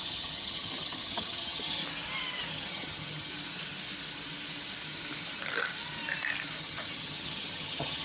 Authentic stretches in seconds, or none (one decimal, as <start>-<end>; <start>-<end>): 1.8-2.5; 3.3-6.6